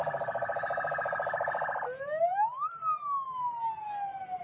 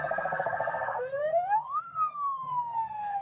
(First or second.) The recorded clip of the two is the first